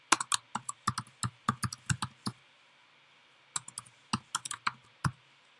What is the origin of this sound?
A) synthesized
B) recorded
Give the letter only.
B